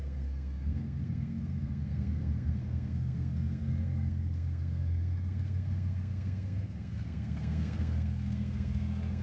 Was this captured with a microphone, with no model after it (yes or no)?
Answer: no